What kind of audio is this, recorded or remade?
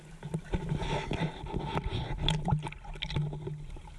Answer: recorded